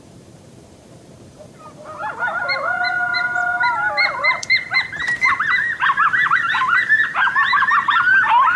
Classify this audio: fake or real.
fake